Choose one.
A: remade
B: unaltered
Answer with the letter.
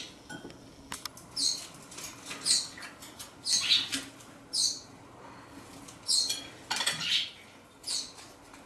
B